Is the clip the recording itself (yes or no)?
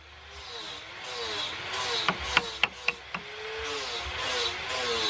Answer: yes